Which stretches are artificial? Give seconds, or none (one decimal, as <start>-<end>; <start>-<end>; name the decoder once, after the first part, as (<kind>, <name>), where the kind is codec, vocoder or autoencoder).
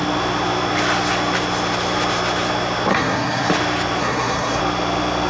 2.9-3.5 (codec, SNAC); 4.0-4.6